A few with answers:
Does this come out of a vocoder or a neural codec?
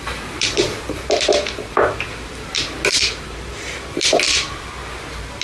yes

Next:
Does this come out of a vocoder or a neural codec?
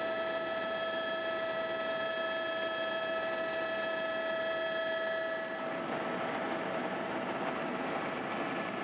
no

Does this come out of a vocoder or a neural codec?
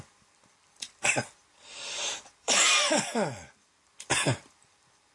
yes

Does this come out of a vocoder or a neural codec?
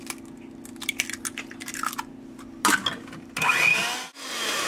no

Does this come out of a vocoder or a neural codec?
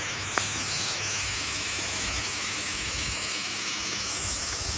yes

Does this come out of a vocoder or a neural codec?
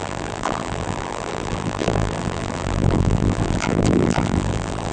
yes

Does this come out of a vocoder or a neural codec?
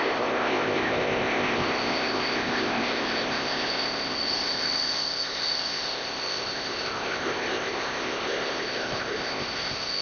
yes